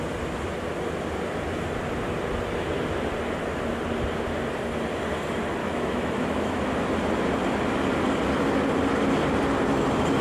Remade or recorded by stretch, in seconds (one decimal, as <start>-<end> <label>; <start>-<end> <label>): 0.0-5.6 recorded; 5.6-6.6 remade; 6.6-10.2 recorded